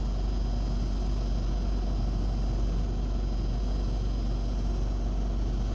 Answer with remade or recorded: recorded